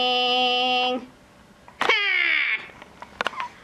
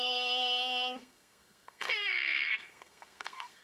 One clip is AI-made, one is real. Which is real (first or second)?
first